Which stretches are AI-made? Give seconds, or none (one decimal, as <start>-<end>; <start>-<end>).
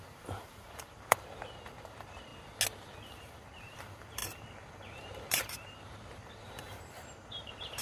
0.0-2.3; 3.2-7.8